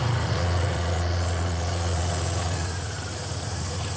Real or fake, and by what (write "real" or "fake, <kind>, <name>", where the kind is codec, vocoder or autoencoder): fake, vocoder, Vocos